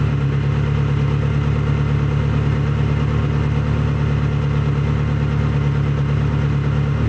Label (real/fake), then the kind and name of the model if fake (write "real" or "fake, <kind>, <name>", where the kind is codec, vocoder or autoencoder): real